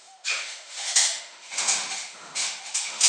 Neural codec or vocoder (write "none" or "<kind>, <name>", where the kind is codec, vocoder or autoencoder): autoencoder, DAC-VAE